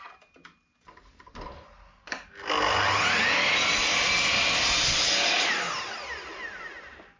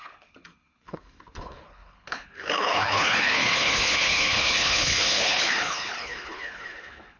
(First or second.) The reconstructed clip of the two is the second